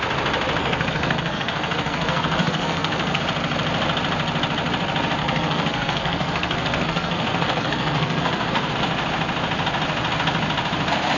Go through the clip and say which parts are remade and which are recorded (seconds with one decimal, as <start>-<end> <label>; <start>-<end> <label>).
0.0-0.6 recorded; 0.6-3.2 remade; 3.2-5.2 recorded; 5.2-8.7 remade; 8.7-11.2 recorded